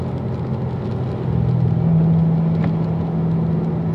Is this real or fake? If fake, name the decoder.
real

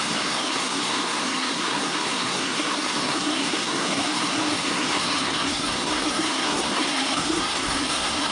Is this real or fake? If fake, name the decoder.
fake, codec, SNAC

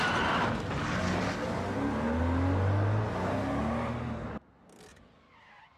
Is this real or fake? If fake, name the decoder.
real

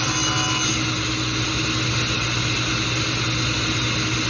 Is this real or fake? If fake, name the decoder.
real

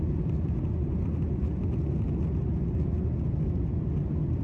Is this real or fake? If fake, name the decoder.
real